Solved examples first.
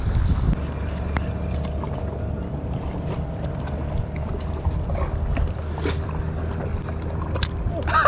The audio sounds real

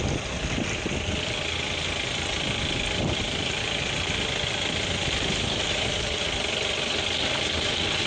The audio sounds real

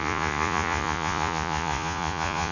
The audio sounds fake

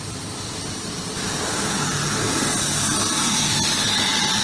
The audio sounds real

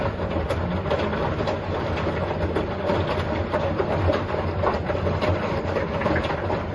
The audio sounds real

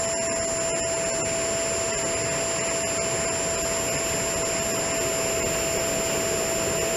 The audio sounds real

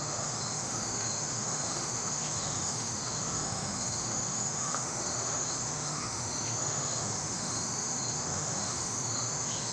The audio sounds fake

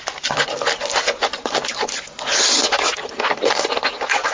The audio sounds real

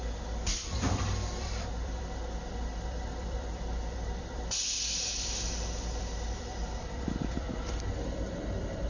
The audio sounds fake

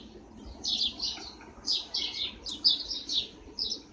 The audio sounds real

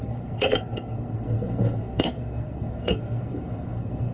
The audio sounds fake